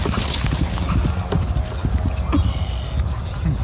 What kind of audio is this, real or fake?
real